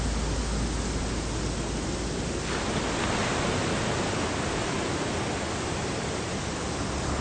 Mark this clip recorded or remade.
recorded